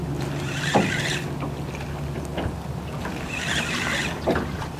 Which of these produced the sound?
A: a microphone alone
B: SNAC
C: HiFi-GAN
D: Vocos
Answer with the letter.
A